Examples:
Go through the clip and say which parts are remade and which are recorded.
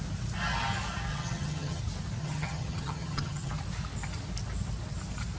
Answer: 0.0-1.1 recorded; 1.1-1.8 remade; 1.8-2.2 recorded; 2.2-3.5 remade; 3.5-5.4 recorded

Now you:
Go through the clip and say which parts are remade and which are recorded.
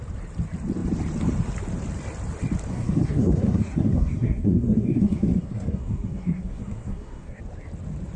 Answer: 0.0-2.7 recorded; 2.7-7.4 remade; 7.4-8.2 recorded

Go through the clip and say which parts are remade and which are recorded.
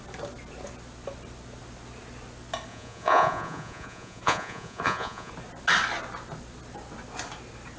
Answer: 0.0-2.7 recorded; 2.7-5.3 remade; 5.3-7.8 recorded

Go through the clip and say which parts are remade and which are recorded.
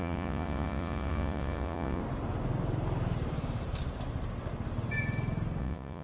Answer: 0.0-2.0 remade; 2.0-5.6 recorded; 5.6-6.0 remade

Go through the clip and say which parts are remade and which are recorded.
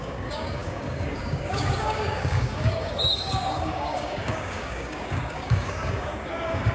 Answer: 0.0-6.7 remade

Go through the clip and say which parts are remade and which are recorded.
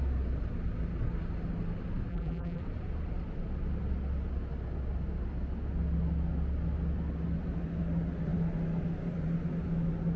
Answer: 0.0-2.1 recorded; 2.1-2.6 remade; 2.6-10.2 recorded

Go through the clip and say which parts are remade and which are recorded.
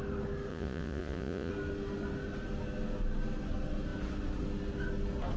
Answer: 0.0-0.5 recorded; 0.5-1.5 remade; 1.5-5.4 recorded